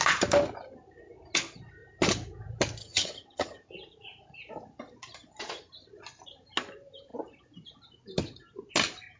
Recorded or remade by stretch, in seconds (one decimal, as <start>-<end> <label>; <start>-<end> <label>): 0.0-2.8 recorded; 2.8-3.7 remade; 3.7-9.2 recorded